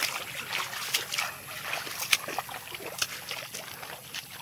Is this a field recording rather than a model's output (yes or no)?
yes